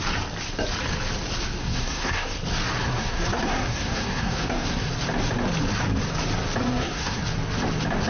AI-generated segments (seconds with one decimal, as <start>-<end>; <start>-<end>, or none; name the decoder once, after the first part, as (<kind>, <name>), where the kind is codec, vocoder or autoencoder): 1.6-2.3 (codec, SNAC); 2.8-4.9; 6.6-7.2